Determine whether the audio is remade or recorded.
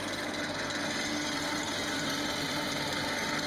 recorded